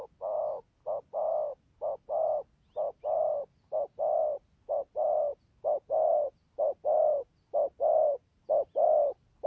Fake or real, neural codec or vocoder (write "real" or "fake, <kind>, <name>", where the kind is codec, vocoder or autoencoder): real